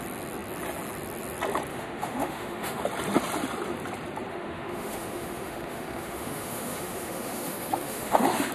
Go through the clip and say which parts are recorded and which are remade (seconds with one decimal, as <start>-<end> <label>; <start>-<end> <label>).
0.0-1.7 recorded; 1.7-2.8 remade; 2.8-4.3 recorded; 4.3-8.5 remade